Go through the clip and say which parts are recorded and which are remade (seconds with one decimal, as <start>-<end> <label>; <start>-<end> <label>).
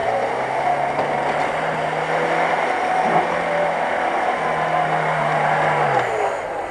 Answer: 0.0-6.7 recorded